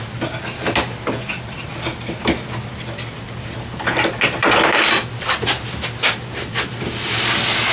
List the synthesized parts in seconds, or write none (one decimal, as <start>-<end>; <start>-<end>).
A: none